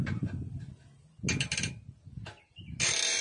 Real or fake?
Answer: real